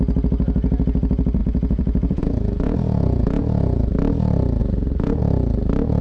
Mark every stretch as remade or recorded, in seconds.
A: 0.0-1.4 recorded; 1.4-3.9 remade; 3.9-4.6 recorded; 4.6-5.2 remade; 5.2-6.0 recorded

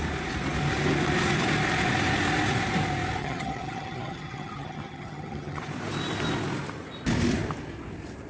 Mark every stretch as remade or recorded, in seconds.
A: 0.0-3.2 recorded; 3.2-5.6 remade; 5.6-8.3 recorded

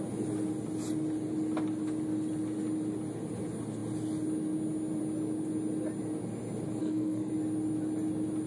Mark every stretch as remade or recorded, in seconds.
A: 0.0-6.8 recorded; 6.8-7.3 remade; 7.3-8.5 recorded